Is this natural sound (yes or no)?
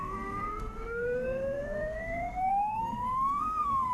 no